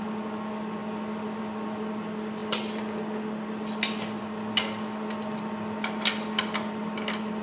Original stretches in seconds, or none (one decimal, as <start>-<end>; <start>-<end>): 0.0-7.4